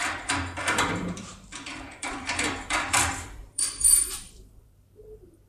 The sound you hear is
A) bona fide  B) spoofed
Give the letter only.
B